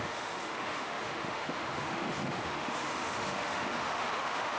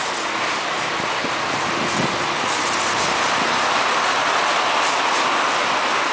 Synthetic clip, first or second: first